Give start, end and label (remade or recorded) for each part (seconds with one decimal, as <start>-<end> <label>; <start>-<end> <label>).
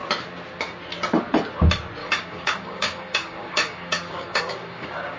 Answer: 0.0-2.0 recorded; 2.0-5.2 remade